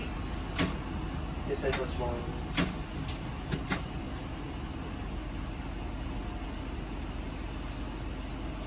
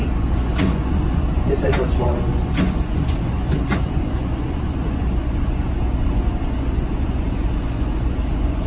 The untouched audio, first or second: first